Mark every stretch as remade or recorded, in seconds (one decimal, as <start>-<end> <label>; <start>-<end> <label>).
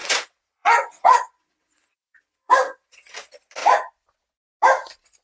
0.0-3.1 remade; 3.1-5.2 recorded